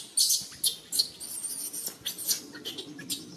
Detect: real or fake real